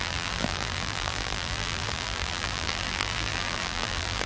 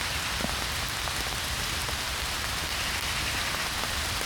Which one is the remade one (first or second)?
first